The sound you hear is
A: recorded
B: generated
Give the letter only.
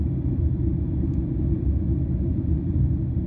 A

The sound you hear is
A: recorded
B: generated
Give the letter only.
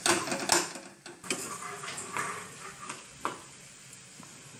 A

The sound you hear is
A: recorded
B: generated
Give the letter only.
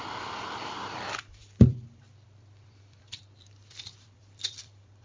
B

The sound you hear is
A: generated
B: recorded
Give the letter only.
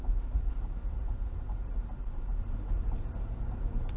A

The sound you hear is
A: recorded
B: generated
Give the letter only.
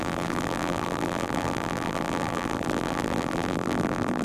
B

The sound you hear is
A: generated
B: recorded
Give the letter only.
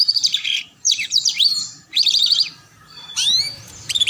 A